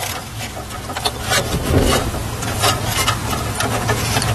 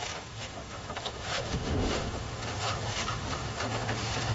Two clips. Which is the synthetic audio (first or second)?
second